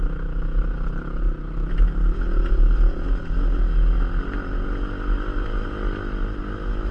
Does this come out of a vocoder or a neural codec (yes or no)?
no